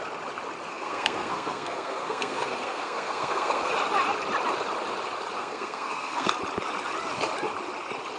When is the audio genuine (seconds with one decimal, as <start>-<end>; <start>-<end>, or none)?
0.0-0.7; 3.7-5.4; 6.3-8.2